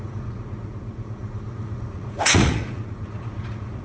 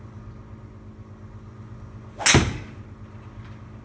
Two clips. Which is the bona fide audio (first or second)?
second